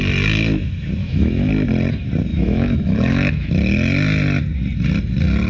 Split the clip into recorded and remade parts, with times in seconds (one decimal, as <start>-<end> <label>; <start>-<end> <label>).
0.0-1.0 recorded; 1.0-1.5 remade; 1.5-2.3 recorded; 2.3-3.5 remade; 3.5-5.5 recorded